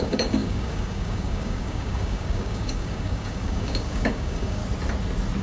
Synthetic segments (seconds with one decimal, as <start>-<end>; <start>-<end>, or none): 0.0-4.6